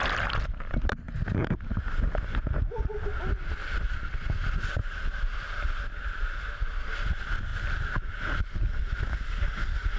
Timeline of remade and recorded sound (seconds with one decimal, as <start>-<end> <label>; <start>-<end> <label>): 0.0-10.0 recorded